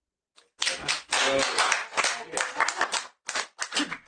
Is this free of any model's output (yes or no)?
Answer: yes